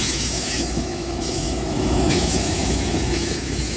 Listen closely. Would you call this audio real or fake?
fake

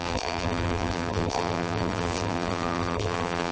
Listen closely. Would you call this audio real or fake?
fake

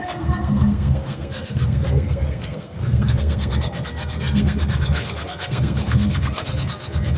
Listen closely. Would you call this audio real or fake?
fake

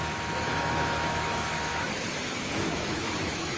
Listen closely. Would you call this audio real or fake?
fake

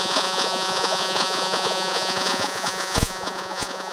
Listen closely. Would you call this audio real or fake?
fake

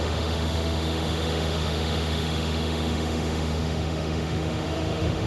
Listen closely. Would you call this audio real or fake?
fake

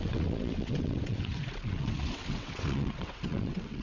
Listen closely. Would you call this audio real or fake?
fake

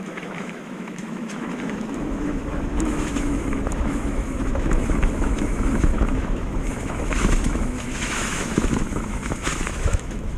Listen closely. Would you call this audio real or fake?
fake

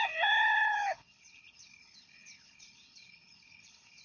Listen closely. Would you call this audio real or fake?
fake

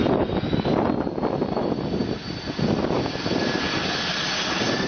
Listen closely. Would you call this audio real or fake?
real